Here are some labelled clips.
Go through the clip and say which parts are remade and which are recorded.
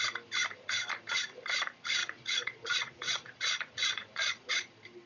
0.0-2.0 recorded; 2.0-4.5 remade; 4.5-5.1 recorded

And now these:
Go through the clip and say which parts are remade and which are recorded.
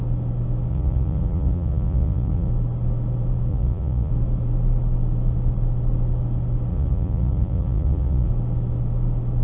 0.0-0.7 recorded; 0.7-2.5 remade; 2.5-3.5 recorded; 3.5-4.1 remade; 4.1-6.7 recorded; 6.7-8.3 remade; 8.3-9.4 recorded